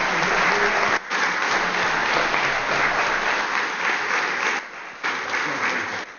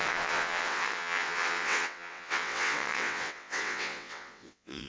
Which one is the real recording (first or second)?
first